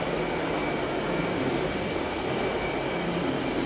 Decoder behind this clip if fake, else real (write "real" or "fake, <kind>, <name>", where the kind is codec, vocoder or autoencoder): real